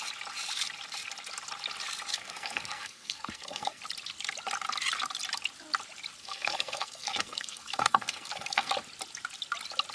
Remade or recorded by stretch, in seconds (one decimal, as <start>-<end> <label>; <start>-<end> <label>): 0.0-2.1 recorded; 2.1-3.8 remade; 3.8-6.2 recorded; 6.2-8.7 remade; 8.7-9.9 recorded